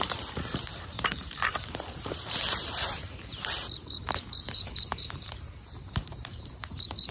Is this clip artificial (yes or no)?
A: yes